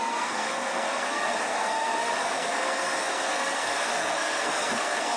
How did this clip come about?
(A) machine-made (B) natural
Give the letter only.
A